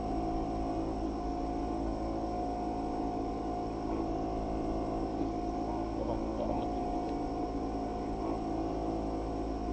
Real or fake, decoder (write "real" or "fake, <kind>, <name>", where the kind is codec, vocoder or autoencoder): real